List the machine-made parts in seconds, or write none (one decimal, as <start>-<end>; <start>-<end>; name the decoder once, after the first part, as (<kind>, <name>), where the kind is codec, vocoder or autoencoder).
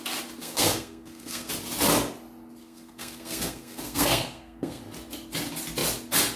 0.4-1.5 (codec, SNAC); 2.6-4.8